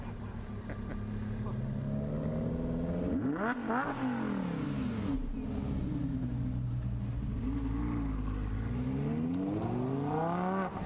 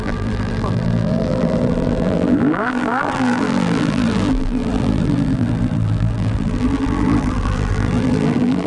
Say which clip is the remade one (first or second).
second